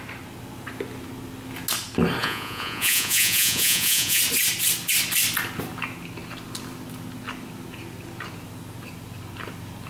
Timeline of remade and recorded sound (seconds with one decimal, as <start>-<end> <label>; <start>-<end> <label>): 0.0-2.2 recorded; 2.2-4.2 remade; 4.2-9.9 recorded